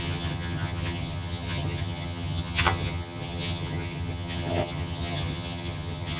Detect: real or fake fake